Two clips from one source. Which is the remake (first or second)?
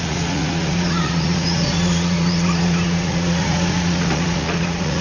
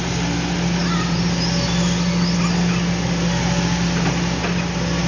first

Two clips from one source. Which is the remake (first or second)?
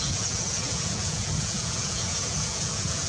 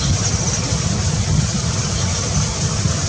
first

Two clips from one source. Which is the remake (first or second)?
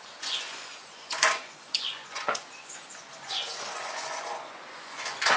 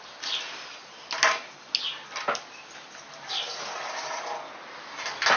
first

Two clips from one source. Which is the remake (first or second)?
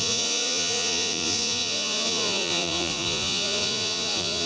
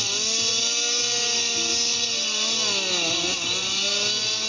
first